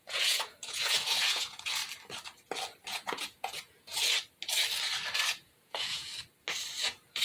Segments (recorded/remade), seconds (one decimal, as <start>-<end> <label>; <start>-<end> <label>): 0.0-1.8 remade; 1.8-2.9 recorded; 2.9-3.9 remade; 3.9-5.3 recorded; 5.3-6.1 remade; 6.1-6.8 recorded; 6.8-7.2 remade